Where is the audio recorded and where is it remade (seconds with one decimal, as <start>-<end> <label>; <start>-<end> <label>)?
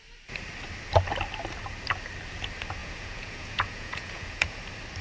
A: 0.0-2.8 recorded; 2.8-4.6 remade; 4.6-5.0 recorded